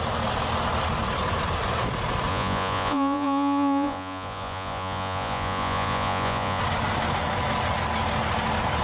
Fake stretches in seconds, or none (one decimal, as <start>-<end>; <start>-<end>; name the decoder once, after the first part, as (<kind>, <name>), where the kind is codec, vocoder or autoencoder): 2.3-6.6 (vocoder, Vocos)